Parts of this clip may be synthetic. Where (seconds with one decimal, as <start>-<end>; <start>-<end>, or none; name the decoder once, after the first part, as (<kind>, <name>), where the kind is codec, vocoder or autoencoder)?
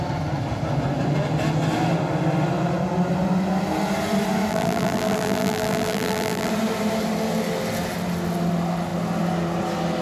4.5-6.5 (vocoder, BigVGAN v2)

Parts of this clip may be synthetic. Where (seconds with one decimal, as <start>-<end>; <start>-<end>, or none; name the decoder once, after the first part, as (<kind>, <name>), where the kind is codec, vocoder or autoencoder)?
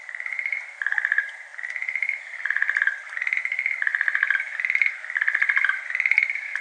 none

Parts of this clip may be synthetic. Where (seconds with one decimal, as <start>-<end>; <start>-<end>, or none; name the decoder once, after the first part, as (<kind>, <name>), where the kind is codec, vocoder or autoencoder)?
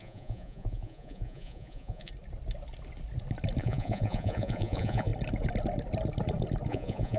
0.0-2.1 (vocoder, Vocos); 3.6-5.1; 6.7-7.2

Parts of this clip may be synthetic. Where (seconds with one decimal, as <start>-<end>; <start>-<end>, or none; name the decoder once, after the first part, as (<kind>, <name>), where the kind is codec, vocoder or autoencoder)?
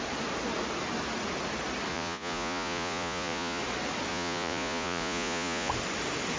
1.9-3.6 (vocoder, Vocos); 4.1-5.7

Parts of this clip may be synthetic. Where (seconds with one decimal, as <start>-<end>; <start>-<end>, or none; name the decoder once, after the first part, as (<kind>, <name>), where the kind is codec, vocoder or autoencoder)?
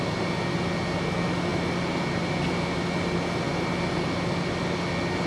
none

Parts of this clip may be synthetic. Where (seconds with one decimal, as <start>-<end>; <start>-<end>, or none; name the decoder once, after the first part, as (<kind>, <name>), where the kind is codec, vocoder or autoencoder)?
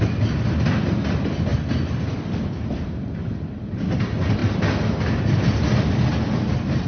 none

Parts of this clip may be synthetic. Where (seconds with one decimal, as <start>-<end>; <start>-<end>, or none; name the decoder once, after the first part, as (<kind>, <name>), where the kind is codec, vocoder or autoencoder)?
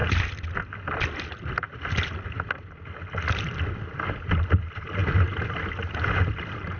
none